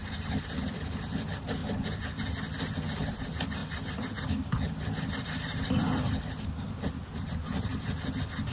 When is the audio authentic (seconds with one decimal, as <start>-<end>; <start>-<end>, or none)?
1.6-2.9; 3.6-7.1; 7.7-8.5